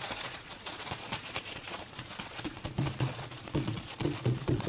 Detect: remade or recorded remade